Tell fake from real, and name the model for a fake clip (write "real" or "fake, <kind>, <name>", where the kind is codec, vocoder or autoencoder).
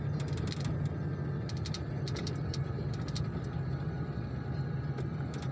real